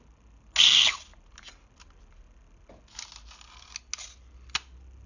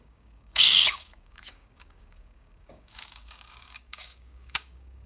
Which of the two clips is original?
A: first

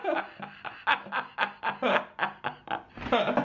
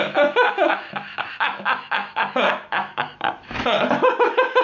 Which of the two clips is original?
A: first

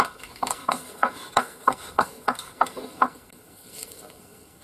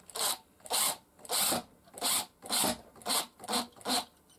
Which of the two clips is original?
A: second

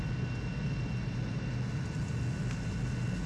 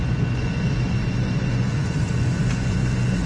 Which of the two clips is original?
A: first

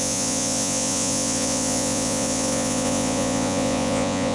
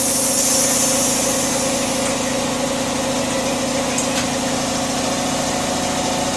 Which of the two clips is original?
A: second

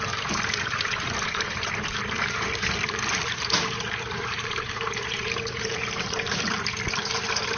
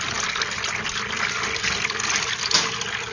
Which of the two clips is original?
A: second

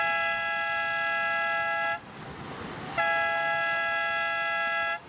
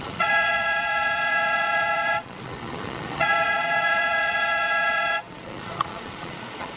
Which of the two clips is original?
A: first